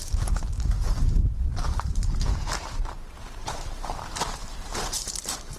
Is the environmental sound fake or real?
fake